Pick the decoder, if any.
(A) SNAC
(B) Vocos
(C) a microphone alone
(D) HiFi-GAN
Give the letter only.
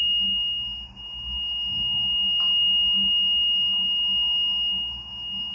C